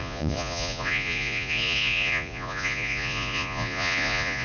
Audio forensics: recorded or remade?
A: remade